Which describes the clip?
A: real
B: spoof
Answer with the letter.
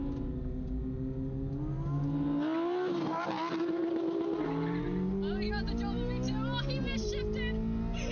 A